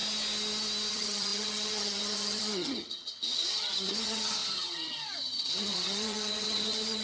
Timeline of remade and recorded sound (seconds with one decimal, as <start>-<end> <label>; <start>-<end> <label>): 0.0-0.9 recorded; 0.9-7.0 remade